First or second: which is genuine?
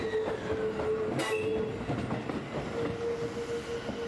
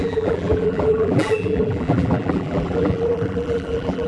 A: first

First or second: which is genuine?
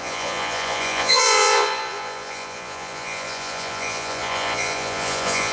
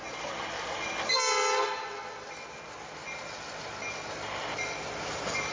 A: second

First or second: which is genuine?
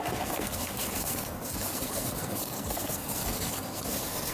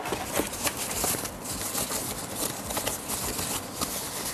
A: second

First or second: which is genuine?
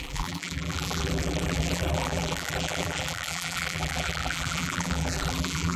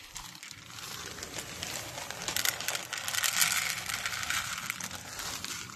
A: second